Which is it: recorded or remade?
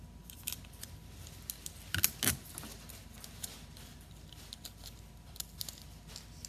recorded